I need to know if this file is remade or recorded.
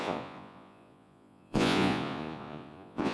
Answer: remade